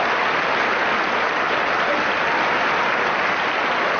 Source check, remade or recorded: recorded